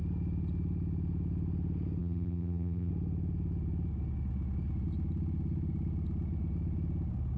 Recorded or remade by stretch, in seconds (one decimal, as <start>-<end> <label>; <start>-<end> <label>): 0.0-2.0 recorded; 2.0-2.9 remade; 2.9-7.4 recorded